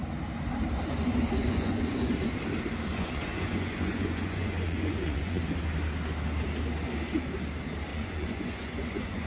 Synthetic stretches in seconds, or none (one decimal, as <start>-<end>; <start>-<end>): 1.5-2.1; 2.9-5.4; 7.9-9.3